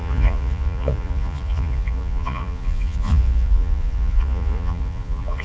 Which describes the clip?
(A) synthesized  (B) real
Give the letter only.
A